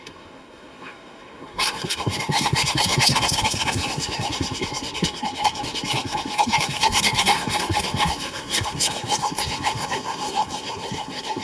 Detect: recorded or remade remade